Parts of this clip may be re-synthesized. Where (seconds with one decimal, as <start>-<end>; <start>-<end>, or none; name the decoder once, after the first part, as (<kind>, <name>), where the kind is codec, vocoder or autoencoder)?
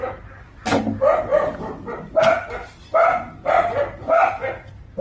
none